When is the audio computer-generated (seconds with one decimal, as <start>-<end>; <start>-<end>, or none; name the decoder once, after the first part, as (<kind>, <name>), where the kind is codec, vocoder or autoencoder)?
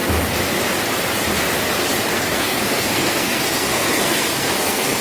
2.1-5.0 (codec, SNAC)